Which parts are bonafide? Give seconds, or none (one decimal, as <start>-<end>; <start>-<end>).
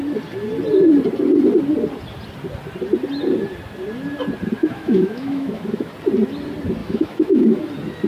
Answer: 0.0-4.6; 5.9-6.8; 7.6-8.1